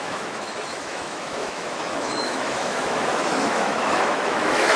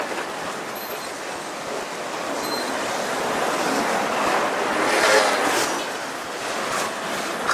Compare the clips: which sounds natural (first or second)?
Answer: second